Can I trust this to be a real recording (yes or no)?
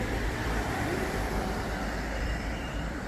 no